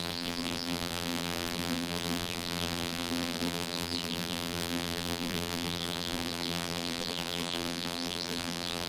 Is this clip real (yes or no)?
no